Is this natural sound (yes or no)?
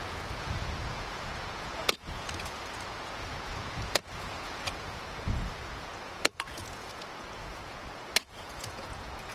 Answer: no